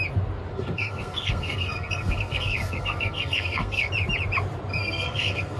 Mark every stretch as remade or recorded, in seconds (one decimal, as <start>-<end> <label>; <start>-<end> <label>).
0.0-0.5 recorded; 0.5-3.9 remade; 3.9-4.7 recorded; 4.7-5.6 remade